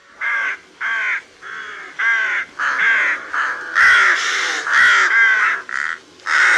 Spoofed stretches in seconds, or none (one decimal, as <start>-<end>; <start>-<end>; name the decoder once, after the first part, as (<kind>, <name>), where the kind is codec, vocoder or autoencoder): 0.0-0.5 (codec, DAC)